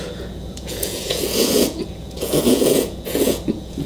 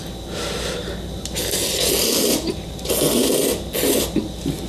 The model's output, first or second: first